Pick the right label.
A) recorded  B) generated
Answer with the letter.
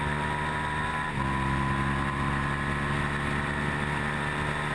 A